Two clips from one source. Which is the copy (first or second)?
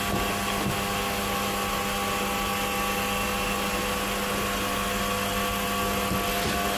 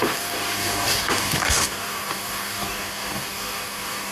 second